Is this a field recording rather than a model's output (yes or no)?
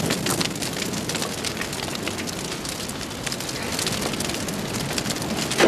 yes